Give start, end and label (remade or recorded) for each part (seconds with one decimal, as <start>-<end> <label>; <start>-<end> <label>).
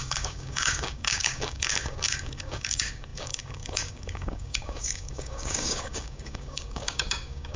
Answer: 0.0-7.6 remade